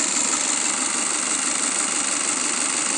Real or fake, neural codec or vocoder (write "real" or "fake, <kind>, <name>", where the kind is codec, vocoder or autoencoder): real